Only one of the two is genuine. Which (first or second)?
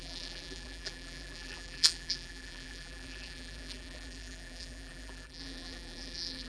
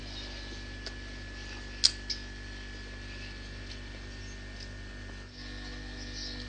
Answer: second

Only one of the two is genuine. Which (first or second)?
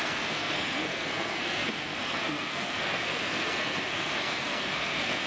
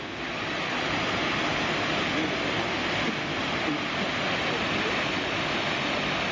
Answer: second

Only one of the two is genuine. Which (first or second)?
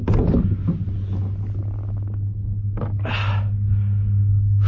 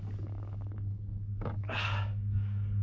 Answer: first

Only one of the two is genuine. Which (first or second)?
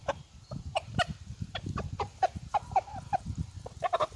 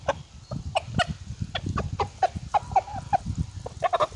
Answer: second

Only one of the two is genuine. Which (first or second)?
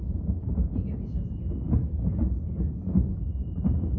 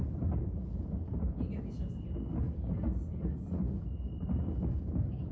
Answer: second